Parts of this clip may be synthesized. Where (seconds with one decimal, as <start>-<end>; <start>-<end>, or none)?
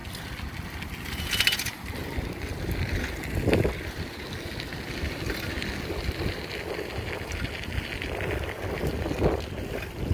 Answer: none